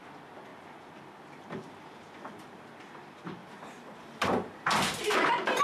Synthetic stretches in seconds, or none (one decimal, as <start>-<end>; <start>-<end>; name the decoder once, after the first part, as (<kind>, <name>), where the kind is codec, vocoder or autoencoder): 3.4-5.6 (vocoder, BigVGAN v2)